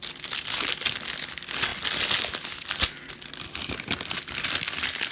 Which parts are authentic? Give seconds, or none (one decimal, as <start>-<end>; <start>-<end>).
0.0-5.1